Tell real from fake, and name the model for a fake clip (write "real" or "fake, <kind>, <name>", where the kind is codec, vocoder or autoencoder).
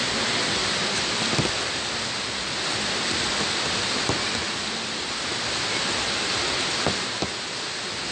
real